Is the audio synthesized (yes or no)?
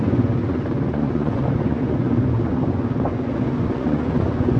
yes